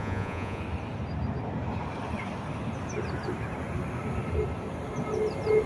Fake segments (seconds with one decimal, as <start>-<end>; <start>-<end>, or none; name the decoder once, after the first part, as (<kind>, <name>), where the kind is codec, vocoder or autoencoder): 0.0-0.6 (vocoder, Vocos)